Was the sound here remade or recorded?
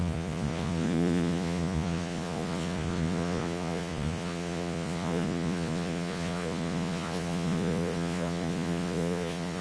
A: remade